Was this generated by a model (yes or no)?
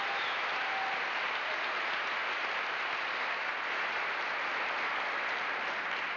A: no